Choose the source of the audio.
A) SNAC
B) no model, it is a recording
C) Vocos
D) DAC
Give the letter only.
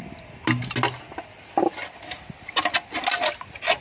B